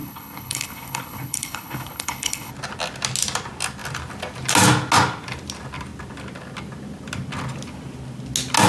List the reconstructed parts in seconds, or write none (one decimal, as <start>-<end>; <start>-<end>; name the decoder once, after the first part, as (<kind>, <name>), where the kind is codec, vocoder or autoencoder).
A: 0.0-2.5 (codec, HILCodec)